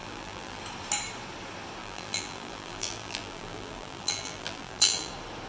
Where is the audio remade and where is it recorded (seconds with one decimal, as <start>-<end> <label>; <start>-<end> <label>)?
0.0-0.6 remade; 0.6-1.8 recorded; 1.8-5.1 remade; 5.1-5.5 recorded